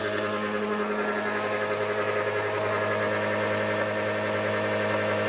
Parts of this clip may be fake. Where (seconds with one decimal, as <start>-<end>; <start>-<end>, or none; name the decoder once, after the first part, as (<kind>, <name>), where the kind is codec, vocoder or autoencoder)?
none